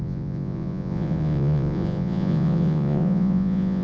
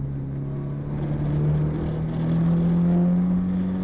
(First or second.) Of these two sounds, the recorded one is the second